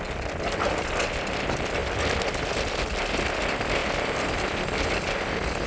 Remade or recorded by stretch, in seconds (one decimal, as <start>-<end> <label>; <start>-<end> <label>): 0.0-5.7 recorded